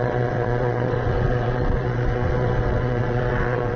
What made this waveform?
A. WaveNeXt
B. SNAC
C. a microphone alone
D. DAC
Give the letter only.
A